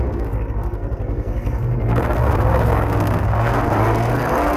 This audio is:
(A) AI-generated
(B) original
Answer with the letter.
A